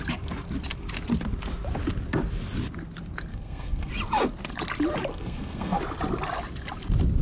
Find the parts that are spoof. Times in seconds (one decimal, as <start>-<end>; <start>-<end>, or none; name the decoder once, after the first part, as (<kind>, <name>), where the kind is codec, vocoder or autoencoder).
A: 3.3-3.9 (codec, SNAC); 5.1-5.8